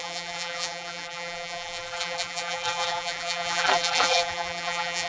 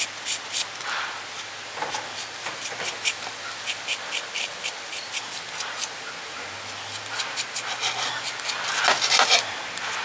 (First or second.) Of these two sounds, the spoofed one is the first